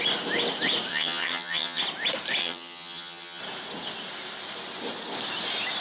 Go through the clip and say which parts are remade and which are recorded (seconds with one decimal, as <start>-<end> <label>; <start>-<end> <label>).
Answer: 0.0-0.9 recorded; 0.9-1.8 remade; 1.8-2.4 recorded; 2.4-3.4 remade; 3.4-5.8 recorded